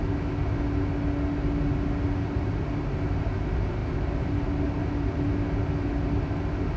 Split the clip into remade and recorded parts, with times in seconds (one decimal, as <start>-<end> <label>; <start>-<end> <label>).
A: 0.0-6.8 recorded